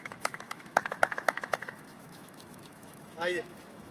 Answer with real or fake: fake